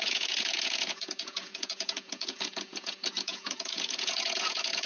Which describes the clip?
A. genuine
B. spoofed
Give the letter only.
B